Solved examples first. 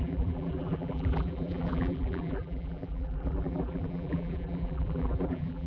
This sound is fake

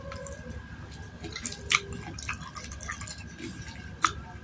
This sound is real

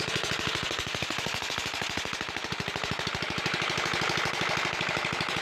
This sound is real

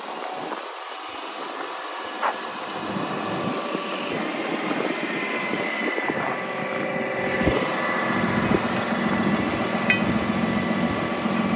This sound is real